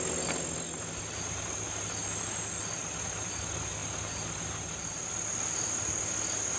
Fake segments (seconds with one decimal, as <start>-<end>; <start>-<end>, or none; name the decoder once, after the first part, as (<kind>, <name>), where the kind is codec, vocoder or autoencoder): none